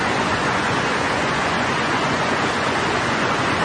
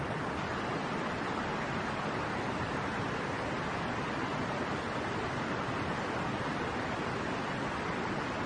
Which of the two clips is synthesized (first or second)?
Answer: first